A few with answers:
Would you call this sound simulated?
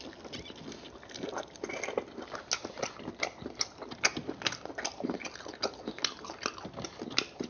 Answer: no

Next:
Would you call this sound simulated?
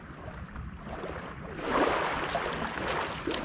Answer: no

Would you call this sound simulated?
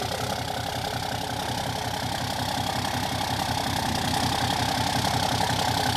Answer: no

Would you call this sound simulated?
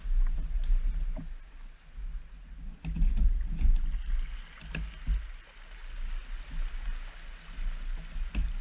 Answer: no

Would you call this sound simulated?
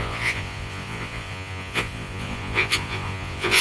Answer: yes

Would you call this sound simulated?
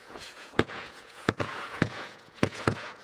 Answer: yes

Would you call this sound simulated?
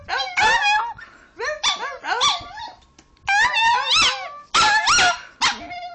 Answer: no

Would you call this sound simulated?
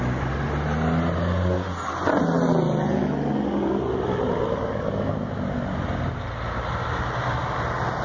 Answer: no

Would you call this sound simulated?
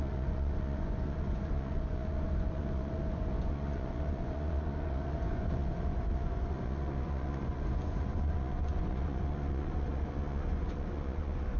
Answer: yes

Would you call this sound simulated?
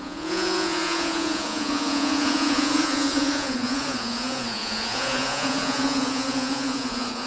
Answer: yes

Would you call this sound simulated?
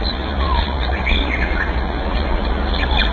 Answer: yes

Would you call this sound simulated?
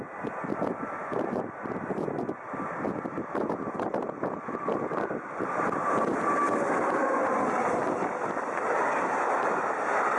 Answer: no